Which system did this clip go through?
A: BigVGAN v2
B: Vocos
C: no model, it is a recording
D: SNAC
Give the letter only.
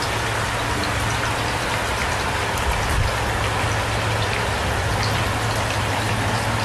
C